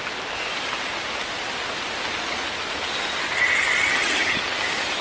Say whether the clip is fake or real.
real